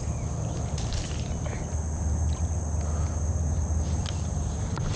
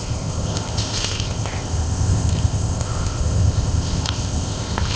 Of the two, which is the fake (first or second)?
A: second